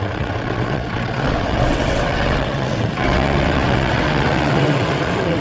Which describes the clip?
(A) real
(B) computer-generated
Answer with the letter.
B